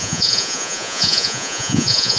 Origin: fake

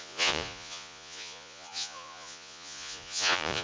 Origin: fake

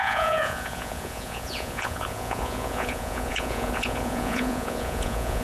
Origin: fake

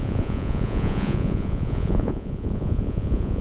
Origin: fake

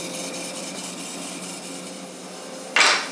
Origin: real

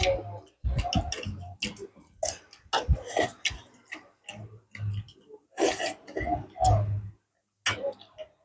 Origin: real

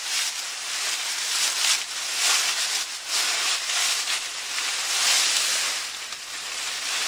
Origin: real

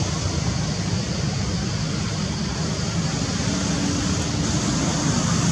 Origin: real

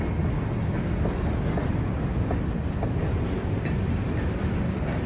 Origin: real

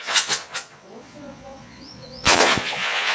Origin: fake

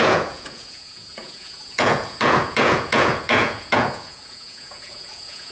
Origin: fake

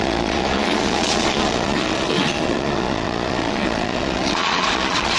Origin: fake